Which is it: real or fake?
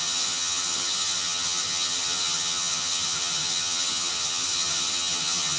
fake